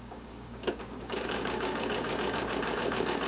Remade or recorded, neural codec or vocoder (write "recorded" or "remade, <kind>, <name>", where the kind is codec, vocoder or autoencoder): remade, codec, DAC